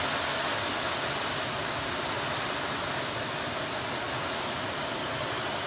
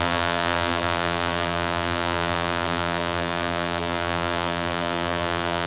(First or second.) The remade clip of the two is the second